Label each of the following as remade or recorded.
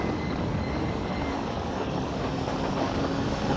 remade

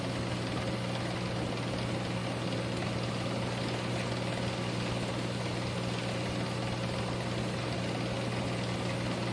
recorded